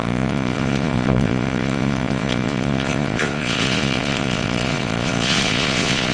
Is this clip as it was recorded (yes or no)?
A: no